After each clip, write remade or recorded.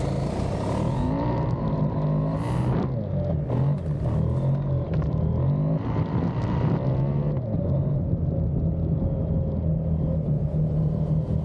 recorded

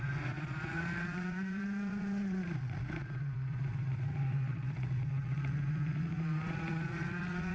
remade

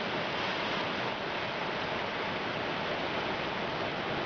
recorded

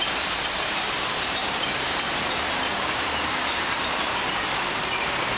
remade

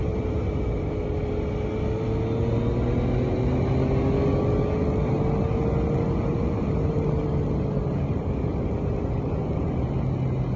recorded